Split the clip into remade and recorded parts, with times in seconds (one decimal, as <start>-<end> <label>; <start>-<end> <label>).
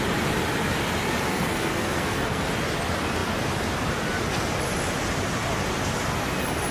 0.0-1.3 recorded; 1.3-2.5 remade; 2.5-6.7 recorded